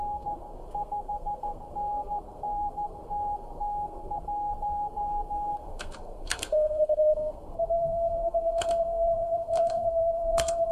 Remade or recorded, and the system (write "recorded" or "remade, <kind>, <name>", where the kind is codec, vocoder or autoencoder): remade, codec, SNAC